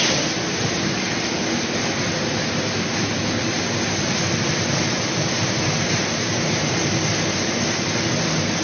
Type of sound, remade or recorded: recorded